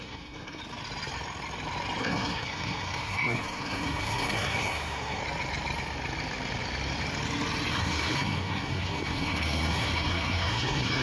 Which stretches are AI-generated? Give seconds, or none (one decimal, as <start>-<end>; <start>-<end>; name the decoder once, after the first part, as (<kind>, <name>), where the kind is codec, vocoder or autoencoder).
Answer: 0.0-0.6 (codec, SNAC); 2.0-5.2; 7.7-11.0

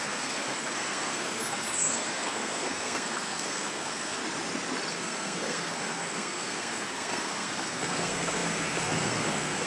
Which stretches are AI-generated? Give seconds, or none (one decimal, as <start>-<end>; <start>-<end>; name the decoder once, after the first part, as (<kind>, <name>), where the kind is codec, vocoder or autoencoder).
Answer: 0.0-4.2 (codec, SNAC); 4.9-9.7

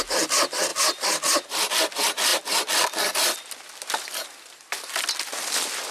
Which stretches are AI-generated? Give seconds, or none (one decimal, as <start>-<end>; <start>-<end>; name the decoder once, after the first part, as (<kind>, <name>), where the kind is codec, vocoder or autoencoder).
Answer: none